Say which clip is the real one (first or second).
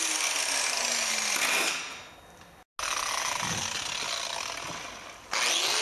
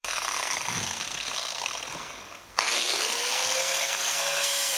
first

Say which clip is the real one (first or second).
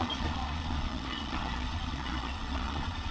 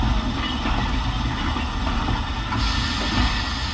second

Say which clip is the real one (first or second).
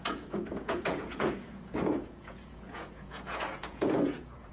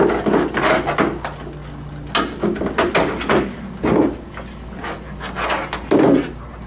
second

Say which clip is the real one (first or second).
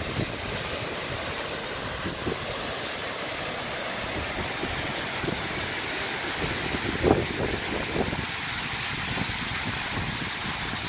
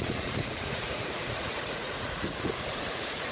first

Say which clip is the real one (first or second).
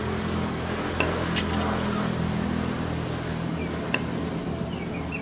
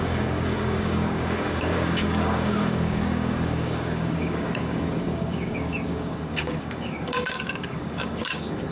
first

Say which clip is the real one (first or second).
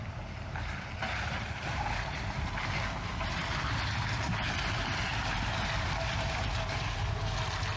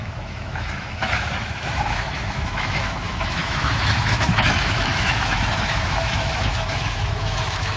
first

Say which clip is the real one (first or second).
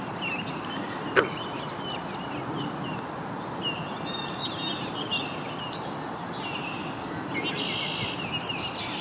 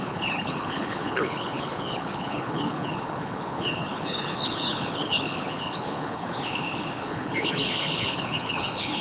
first